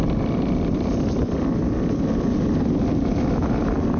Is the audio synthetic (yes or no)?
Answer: no